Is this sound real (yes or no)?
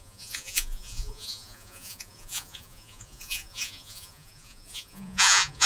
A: no